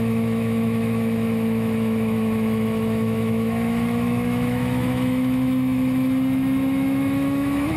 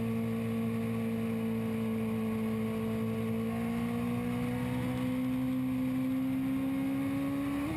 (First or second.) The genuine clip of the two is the second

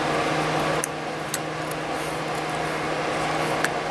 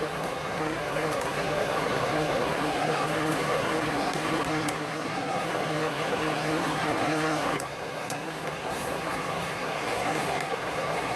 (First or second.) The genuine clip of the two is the first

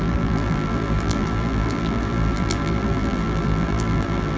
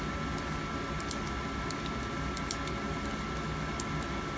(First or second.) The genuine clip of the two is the second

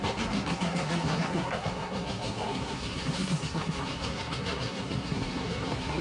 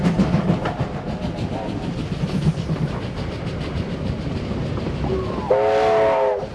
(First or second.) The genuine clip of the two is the second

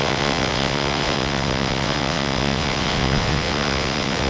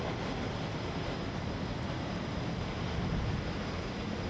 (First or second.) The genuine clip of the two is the second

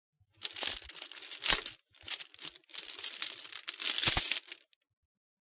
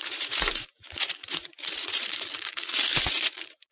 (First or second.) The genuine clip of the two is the first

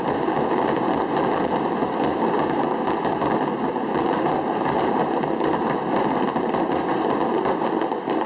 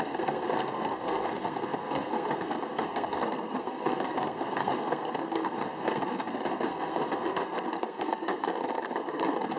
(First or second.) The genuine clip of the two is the first